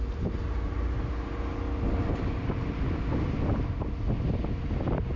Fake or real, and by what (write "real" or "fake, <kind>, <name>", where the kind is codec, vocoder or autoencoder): real